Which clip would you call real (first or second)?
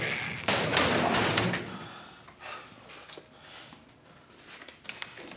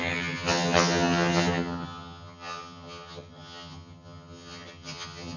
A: first